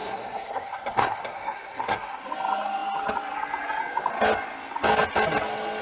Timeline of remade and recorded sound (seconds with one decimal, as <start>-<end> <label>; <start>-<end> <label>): 0.0-2.2 remade; 2.2-5.8 recorded